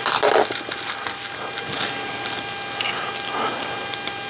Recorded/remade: recorded